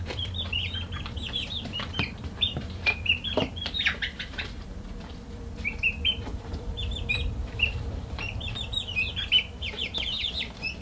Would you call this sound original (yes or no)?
no